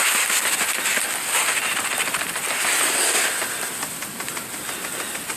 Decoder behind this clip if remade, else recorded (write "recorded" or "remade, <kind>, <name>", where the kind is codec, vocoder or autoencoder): recorded